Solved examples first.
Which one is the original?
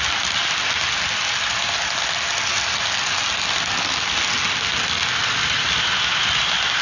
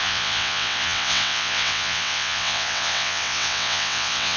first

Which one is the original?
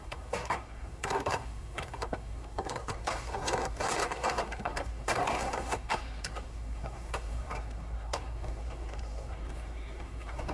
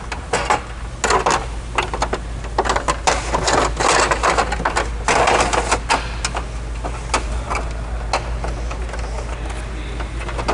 second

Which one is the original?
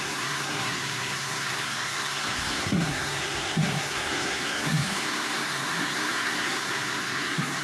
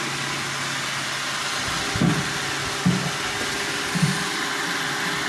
second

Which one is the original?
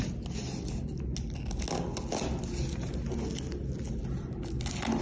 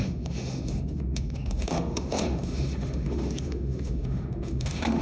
first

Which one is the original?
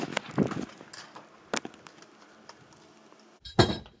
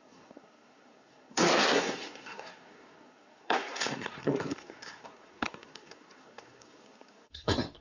first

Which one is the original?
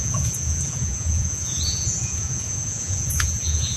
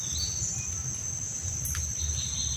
second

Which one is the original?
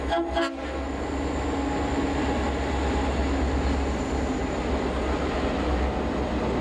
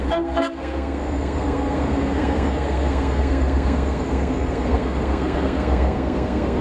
first